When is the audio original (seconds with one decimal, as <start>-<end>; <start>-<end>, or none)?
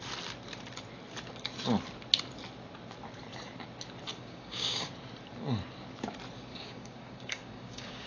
0.0-4.1; 4.9-6.5